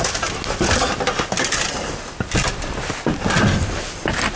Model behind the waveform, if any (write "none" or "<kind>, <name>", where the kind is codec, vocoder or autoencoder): none